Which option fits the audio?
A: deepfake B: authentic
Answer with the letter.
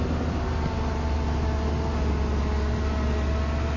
B